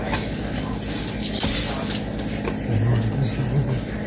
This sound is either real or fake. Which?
real